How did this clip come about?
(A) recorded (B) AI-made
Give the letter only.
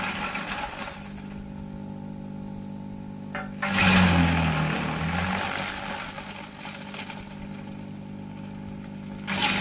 A